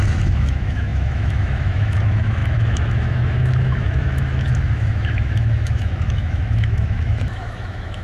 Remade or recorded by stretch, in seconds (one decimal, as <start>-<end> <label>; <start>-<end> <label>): 0.0-8.0 remade